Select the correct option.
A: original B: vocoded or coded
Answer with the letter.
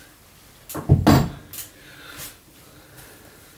A